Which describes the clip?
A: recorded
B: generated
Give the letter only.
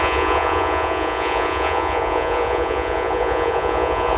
B